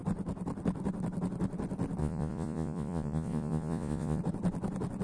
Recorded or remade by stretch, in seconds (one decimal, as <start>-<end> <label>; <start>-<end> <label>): 0.0-2.0 recorded; 2.0-4.2 remade; 4.2-5.0 recorded